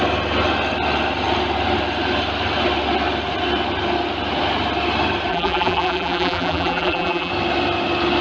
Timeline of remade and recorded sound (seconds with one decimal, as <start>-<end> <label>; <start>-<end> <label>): 0.0-5.3 recorded; 5.3-7.3 remade; 7.3-8.2 recorded